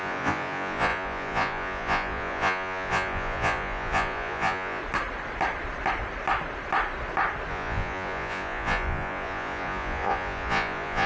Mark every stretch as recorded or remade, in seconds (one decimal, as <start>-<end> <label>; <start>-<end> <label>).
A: 0.0-4.8 remade; 4.8-7.5 recorded; 7.5-11.1 remade